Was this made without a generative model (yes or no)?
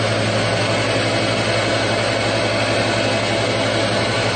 yes